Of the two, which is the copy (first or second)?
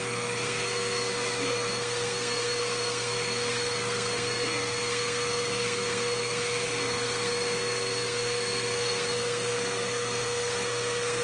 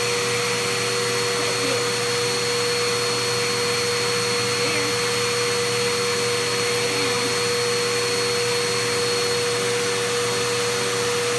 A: first